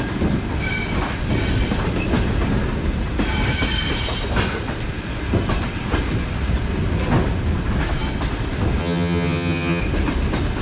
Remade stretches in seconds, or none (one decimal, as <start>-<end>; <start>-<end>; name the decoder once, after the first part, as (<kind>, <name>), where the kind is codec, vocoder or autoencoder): 8.8-9.8 (vocoder, HiFi-GAN)